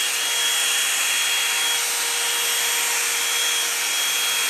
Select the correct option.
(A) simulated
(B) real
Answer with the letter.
B